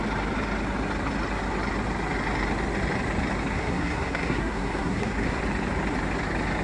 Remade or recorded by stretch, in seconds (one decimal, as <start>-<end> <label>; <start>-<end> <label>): 0.0-3.5 recorded; 3.5-5.4 remade; 5.4-6.6 recorded